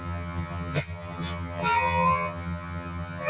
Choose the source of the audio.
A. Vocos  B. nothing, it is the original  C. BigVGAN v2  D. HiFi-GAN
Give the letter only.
D